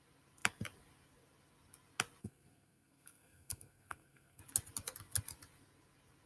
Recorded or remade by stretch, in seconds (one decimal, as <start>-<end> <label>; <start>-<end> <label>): 0.0-2.2 recorded; 2.2-4.4 remade; 4.4-6.3 recorded